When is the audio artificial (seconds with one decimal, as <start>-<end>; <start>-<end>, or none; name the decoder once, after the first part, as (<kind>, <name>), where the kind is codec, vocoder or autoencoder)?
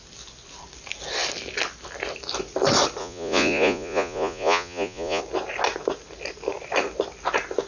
3.0-5.2 (vocoder, Vocos)